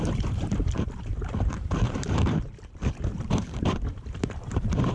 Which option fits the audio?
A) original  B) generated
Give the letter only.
B